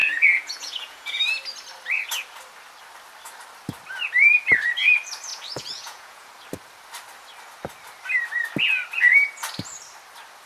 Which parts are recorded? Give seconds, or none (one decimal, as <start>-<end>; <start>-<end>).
1.2-5.3; 6.3-10.5